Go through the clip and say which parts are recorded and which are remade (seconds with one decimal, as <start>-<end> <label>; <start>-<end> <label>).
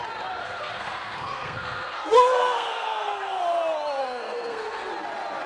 0.0-0.4 recorded; 0.4-3.4 remade; 3.4-4.0 recorded; 4.0-4.9 remade; 4.9-5.5 recorded